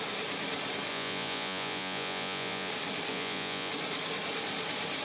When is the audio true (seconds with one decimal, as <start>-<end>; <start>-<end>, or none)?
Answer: 0.0-0.9; 2.7-3.1; 3.7-5.0